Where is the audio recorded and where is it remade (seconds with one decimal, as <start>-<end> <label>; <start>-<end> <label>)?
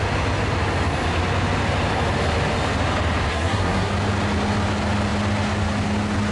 0.0-3.3 recorded; 3.3-3.9 remade; 3.9-6.3 recorded